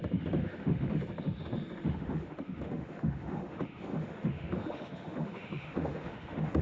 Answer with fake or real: fake